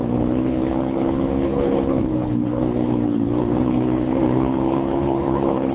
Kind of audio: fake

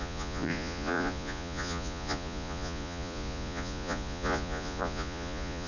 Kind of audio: fake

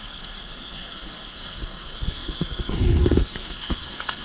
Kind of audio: fake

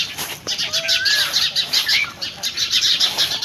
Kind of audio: fake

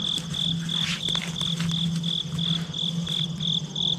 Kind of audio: real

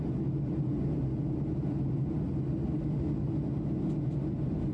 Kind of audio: real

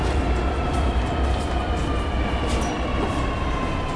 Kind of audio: real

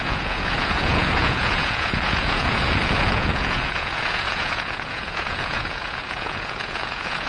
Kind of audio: fake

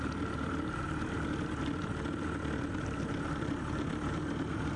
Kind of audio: real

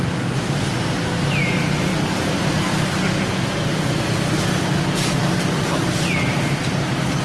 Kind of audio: real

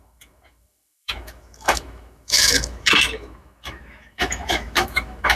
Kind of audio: fake